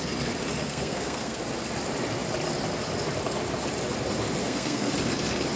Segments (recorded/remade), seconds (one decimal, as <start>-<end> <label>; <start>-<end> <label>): 0.0-0.6 recorded; 0.6-1.4 remade; 1.4-4.4 recorded; 4.4-4.9 remade; 4.9-5.6 recorded